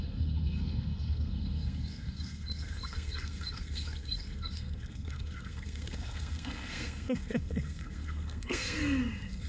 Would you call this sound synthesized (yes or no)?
yes